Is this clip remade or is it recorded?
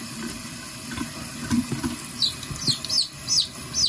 recorded